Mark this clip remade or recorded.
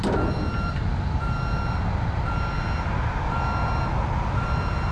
recorded